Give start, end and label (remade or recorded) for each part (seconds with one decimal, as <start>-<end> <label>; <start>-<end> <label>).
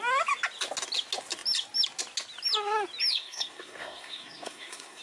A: 0.0-3.1 recorded; 3.1-5.0 remade